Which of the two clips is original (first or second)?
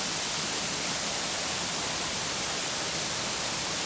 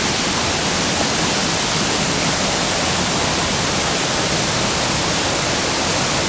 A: second